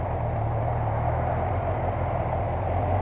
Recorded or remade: recorded